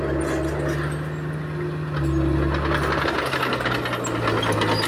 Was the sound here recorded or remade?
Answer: recorded